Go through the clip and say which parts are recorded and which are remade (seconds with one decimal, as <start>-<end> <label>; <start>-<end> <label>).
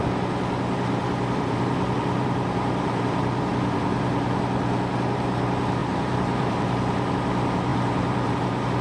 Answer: 0.0-1.0 recorded; 1.0-3.5 remade; 3.5-5.8 recorded; 5.8-7.1 remade; 7.1-7.7 recorded; 7.7-8.3 remade; 8.3-8.8 recorded